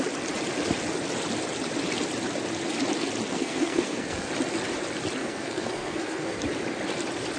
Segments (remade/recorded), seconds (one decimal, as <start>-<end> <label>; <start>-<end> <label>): 0.0-3.3 recorded; 3.3-4.3 remade; 4.3-5.2 recorded; 5.2-6.4 remade; 6.4-7.4 recorded